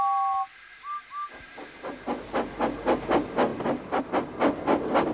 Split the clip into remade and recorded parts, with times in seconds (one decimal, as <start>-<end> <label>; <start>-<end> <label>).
0.0-5.1 recorded